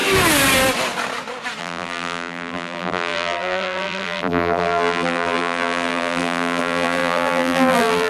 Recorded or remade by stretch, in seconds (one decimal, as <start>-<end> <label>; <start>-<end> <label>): 0.0-1.6 recorded; 1.6-8.1 remade